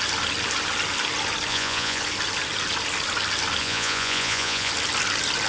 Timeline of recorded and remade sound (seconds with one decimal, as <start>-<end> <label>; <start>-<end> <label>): 0.0-1.5 recorded; 1.5-2.0 remade; 2.0-3.6 recorded; 3.6-4.7 remade; 4.7-5.5 recorded